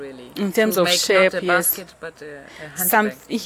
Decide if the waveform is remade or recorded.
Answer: recorded